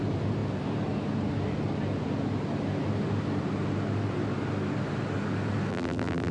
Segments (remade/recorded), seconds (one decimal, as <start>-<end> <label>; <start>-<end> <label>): 0.0-5.7 recorded; 5.7-6.3 remade